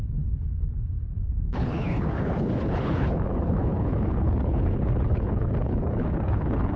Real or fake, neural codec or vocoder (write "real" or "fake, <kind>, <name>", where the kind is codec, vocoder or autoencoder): fake, codec, HILCodec